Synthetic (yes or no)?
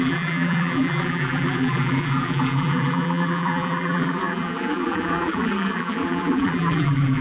yes